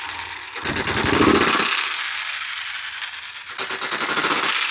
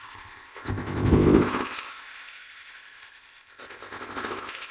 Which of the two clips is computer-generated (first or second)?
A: second